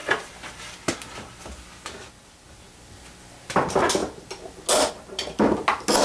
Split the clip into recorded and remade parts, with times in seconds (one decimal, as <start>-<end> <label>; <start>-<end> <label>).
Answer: 0.0-6.0 recorded